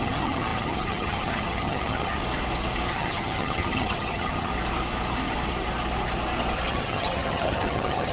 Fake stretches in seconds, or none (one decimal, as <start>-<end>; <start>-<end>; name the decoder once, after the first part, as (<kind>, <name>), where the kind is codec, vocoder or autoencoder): 0.0-2.2 (vocoder, HiFi-GAN); 2.9-4.5; 6.7-8.1